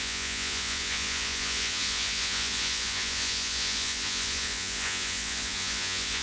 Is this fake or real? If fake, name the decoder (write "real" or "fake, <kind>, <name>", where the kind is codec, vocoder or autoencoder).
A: fake, vocoder, Vocos